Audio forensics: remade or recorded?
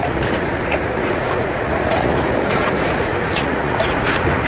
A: remade